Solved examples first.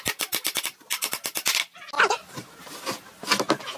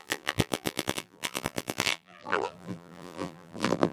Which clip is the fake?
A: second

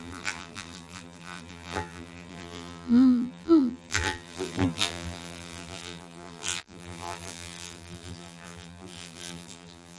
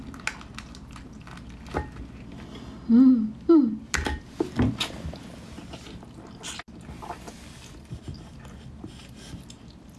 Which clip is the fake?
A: first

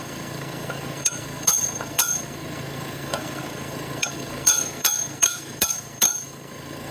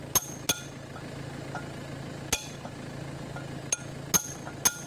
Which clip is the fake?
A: first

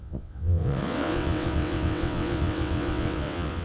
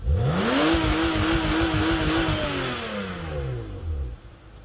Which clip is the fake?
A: first